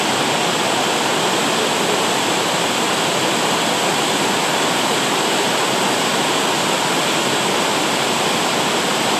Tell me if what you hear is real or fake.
real